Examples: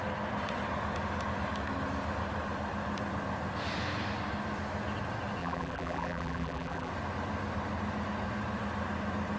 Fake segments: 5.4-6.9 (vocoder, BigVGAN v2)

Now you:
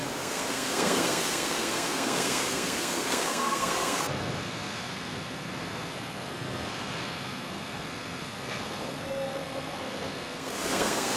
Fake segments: 0.0-11.2 (codec, SNAC)

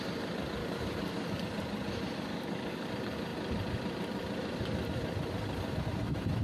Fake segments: 0.6-1.4 (codec, DAC); 2.3-2.9

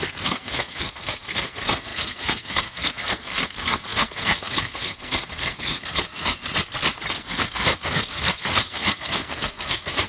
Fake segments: 0.0-6.4 (codec, SNAC); 7.1-10.1

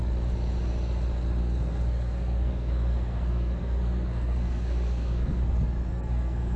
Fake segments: 1.4-5.4 (codec, SNAC); 5.9-6.6

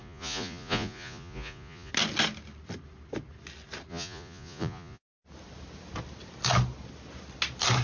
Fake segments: 0.0-1.9 (vocoder, Vocos); 3.9-5.1